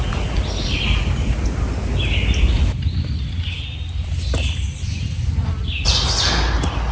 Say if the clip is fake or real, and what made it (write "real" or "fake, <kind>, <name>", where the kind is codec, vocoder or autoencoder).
real